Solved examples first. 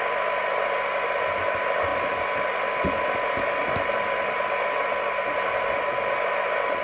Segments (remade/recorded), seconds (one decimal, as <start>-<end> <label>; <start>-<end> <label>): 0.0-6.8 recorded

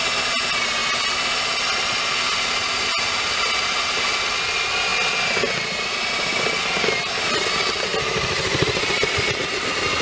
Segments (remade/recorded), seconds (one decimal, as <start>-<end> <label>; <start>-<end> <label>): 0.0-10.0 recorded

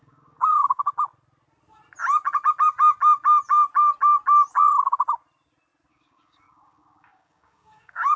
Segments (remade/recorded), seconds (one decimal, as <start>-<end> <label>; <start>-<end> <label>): 0.0-0.8 remade; 0.8-5.9 recorded; 5.9-8.2 remade